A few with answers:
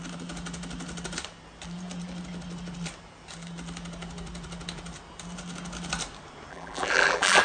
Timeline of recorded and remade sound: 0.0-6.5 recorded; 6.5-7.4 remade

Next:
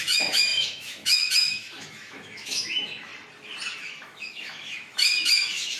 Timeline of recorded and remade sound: 0.0-3.1 remade; 3.1-3.8 recorded; 3.8-5.8 remade

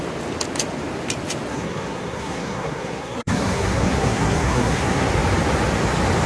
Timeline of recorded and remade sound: 0.0-1.5 recorded; 1.5-5.1 remade; 5.1-6.3 recorded

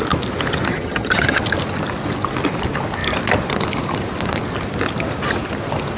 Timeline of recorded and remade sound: 0.0-0.7 recorded; 0.7-1.4 remade; 1.4-6.0 recorded

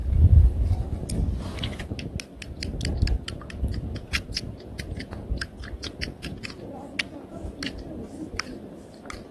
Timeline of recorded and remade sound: 0.0-0.7 remade; 0.7-3.7 recorded; 3.7-6.8 remade; 6.8-9.3 recorded

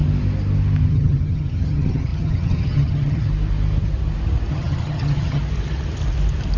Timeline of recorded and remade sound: 0.0-0.9 recorded; 0.9-3.3 remade; 3.3-4.5 recorded; 4.5-5.4 remade; 5.4-6.6 recorded

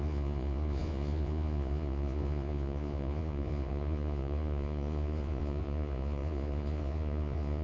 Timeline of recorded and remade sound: 0.0-7.6 remade